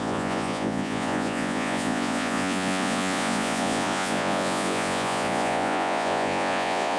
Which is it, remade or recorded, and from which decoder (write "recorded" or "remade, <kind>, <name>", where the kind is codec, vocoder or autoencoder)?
remade, vocoder, Vocos